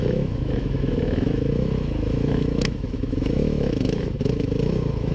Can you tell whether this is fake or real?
fake